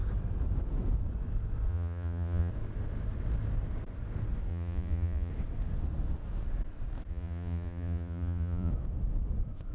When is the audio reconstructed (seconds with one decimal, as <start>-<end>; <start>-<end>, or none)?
1.7-2.5; 4.5-5.3; 7.1-8.7